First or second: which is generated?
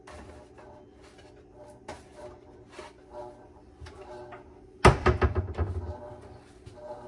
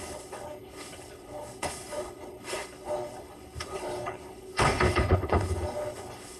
second